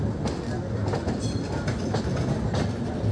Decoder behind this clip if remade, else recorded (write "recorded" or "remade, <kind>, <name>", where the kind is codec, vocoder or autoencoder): recorded